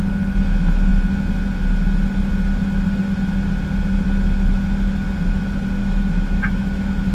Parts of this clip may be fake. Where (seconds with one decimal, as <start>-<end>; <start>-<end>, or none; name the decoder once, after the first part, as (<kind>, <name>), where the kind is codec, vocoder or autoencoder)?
5.8-7.1 (autoencoder, DAC-VAE)